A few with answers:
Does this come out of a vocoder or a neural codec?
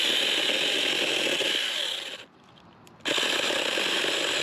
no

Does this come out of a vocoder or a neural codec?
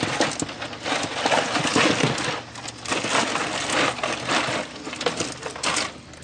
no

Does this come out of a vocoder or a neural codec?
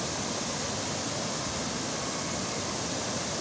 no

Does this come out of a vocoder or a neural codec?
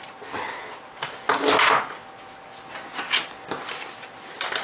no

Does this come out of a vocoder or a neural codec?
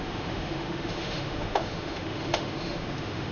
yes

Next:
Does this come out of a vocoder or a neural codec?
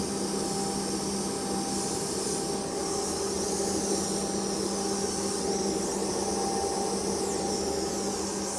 no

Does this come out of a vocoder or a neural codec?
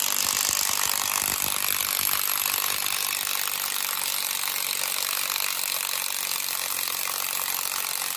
no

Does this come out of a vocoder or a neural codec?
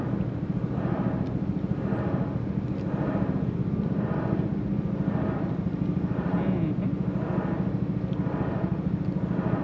no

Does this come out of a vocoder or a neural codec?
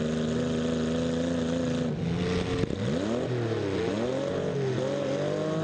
no